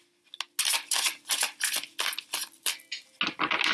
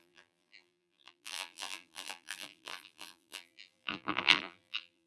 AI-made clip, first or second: second